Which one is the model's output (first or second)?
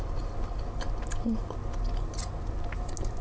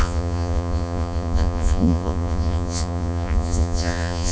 second